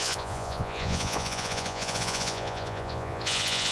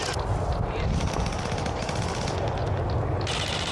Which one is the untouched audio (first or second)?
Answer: second